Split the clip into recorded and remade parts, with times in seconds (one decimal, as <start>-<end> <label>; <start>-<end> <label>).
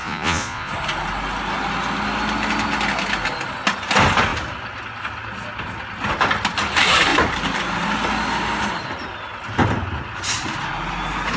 0.0-0.7 remade; 0.7-11.4 recorded